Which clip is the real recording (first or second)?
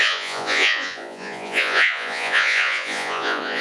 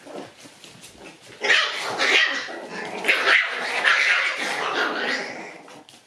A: second